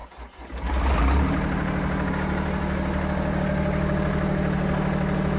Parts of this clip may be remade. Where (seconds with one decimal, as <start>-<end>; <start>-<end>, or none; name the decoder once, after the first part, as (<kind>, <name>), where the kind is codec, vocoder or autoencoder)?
none